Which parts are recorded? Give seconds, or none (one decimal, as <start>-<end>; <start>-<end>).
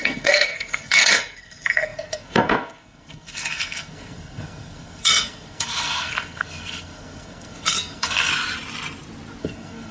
8.3-9.4